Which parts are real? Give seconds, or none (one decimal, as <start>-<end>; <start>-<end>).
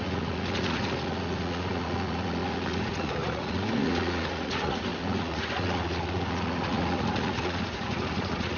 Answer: none